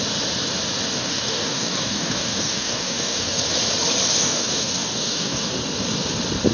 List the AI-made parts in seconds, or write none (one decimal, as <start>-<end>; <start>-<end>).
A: 1.0-3.4; 4.1-5.5